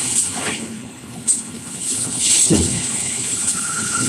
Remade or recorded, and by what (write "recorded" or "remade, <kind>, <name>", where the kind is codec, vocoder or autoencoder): remade, codec, HILCodec